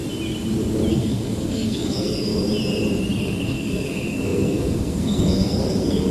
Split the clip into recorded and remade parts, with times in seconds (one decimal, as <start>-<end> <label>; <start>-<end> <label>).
0.0-0.9 recorded; 0.9-2.3 remade; 2.3-3.2 recorded; 3.2-6.1 remade

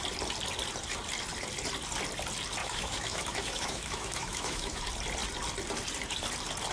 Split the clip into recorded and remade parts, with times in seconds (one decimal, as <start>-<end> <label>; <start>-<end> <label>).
0.0-2.6 recorded; 2.6-4.8 remade; 4.8-6.7 recorded

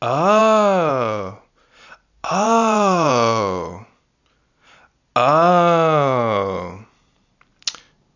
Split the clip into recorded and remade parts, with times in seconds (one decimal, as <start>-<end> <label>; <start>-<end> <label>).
0.0-2.2 recorded; 2.2-3.1 remade; 3.1-8.2 recorded

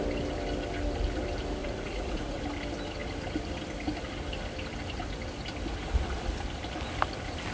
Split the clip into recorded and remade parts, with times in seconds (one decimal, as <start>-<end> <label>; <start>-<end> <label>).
0.0-1.6 recorded; 1.6-2.4 remade; 2.4-7.5 recorded

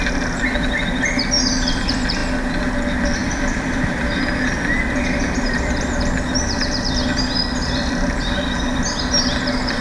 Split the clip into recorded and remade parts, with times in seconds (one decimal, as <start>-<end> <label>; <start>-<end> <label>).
0.0-3.2 recorded; 3.2-4.1 remade; 4.1-9.8 recorded

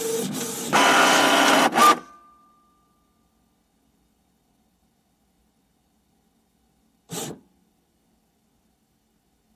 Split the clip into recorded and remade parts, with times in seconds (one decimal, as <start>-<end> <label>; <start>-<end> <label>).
0.0-9.6 recorded

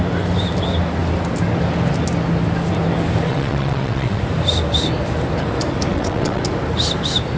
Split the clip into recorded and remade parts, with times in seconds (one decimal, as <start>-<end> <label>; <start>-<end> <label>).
0.0-3.3 recorded; 3.3-4.2 remade; 4.2-5.9 recorded; 5.9-6.4 remade; 6.4-7.4 recorded